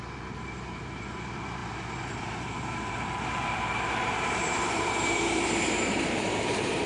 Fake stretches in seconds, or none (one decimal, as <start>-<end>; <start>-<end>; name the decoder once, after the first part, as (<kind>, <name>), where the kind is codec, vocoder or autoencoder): 0.0-1.6 (vocoder, BigVGAN v2); 2.2-6.9